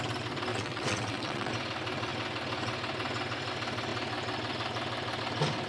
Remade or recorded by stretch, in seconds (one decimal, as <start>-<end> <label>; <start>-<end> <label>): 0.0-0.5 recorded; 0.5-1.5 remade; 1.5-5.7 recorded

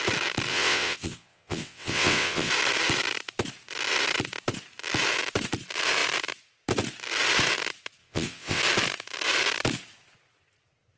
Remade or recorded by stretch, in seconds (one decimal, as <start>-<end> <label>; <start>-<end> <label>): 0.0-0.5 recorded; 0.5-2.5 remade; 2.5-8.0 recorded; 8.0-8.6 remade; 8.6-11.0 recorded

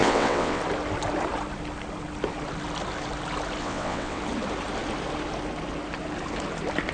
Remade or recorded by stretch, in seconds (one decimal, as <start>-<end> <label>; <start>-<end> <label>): 0.0-0.6 remade; 0.6-3.6 recorded; 3.6-4.2 remade; 4.2-6.9 recorded

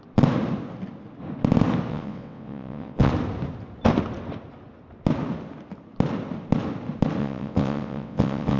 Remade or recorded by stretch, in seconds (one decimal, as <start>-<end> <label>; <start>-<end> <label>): 0.0-1.9 recorded; 1.9-3.1 remade; 3.1-7.2 recorded; 7.2-8.6 remade

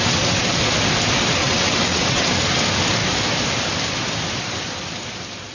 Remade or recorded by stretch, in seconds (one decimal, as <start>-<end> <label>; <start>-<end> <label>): 0.0-1.4 recorded; 1.4-2.3 remade; 2.3-5.5 recorded

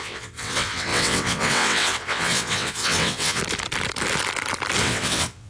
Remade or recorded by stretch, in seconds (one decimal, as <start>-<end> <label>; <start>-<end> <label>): 0.0-3.4 remade; 3.4-4.8 recorded; 4.8-5.5 remade

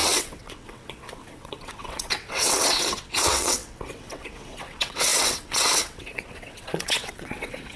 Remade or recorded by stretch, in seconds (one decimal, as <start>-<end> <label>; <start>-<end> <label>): 0.0-7.8 remade